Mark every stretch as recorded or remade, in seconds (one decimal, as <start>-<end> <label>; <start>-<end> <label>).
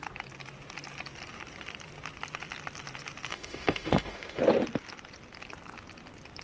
0.0-3.3 recorded; 3.3-4.4 remade; 4.4-6.4 recorded